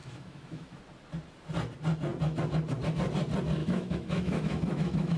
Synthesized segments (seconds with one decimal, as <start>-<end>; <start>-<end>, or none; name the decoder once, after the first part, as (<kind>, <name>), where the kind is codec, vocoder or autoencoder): 0.0-0.8 (autoencoder, DAC-VAE); 3.6-5.2